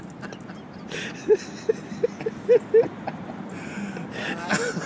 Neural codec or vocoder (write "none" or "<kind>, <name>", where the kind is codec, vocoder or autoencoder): none